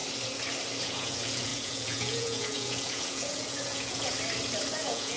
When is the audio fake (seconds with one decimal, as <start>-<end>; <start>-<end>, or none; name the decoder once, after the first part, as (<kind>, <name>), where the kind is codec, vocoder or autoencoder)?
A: 0.8-4.1 (vocoder, Vocos); 4.7-5.2